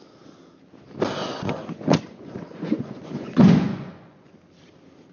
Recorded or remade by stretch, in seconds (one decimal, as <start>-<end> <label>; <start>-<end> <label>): 0.0-1.2 recorded; 1.2-4.3 remade; 4.3-5.1 recorded